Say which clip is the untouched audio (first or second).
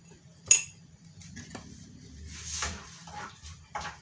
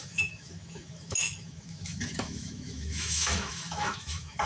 first